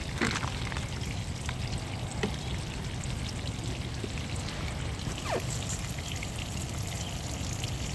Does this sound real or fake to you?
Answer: real